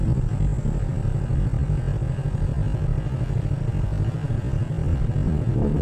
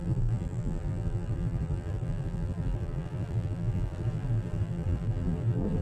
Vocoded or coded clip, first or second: second